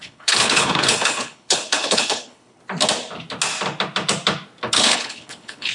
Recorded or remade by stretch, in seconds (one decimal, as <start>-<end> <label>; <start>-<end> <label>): 0.0-2.6 remade; 2.6-4.7 recorded; 4.7-5.7 remade